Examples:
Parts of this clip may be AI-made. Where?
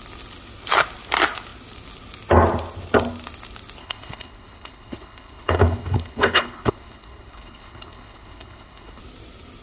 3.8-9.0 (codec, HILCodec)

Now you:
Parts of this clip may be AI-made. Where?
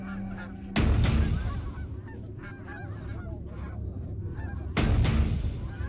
1.4-4.8 (vocoder, BigVGAN v2)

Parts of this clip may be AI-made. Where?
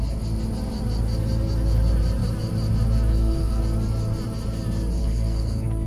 3.1-3.6 (codec, SNAC); 5.0-5.9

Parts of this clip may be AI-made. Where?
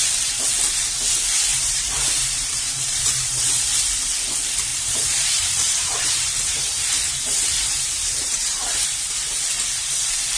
1.5-3.4 (vocoder, BigVGAN v2); 4.7-9.3